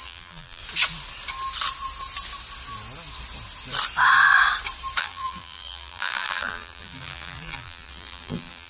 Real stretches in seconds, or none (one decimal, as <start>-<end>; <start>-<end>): 0.6-5.0